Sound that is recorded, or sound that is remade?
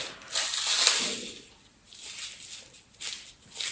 recorded